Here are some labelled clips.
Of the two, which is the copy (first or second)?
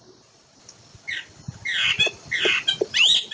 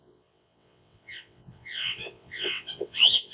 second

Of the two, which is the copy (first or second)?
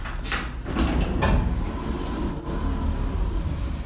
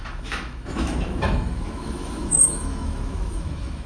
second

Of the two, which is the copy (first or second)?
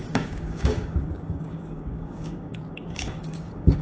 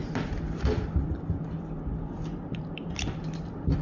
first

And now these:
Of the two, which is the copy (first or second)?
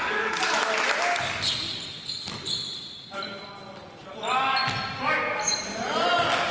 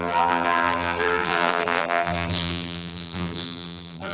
second